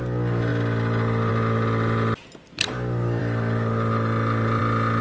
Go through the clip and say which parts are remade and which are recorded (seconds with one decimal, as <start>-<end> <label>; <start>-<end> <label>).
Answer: 0.0-5.0 recorded